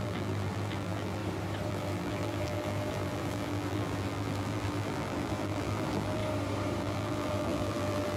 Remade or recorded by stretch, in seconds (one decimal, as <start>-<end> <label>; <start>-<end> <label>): 0.0-1.2 remade; 1.2-1.7 recorded; 1.7-6.2 remade; 6.2-6.8 recorded; 6.8-8.2 remade